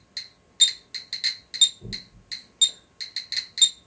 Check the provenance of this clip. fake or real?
real